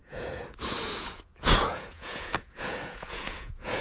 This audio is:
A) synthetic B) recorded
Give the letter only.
A